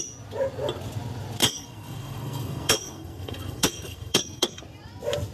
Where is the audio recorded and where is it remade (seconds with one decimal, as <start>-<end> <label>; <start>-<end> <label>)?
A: 0.0-1.4 recorded; 1.4-4.6 remade; 4.6-5.3 recorded